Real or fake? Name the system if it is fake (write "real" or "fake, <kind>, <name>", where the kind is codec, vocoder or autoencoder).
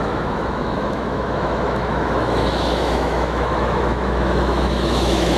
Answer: fake, autoencoder, DAC-VAE